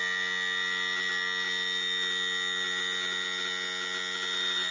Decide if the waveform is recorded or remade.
recorded